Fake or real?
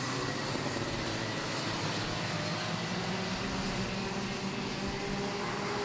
real